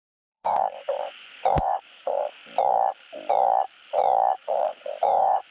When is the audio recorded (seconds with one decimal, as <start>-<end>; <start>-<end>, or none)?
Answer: 2.4-4.4